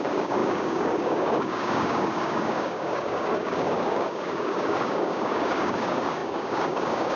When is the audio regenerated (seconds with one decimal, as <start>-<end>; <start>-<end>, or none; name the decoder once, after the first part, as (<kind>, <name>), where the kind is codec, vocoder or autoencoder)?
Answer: 0.0-7.2 (codec, DAC)